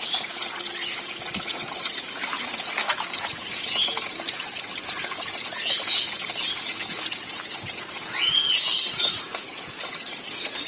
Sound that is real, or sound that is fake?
fake